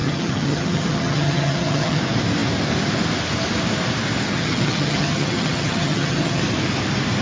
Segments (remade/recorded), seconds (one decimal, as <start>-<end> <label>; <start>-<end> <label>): 0.0-2.0 remade; 2.0-4.3 recorded; 4.3-6.4 remade; 6.4-7.2 recorded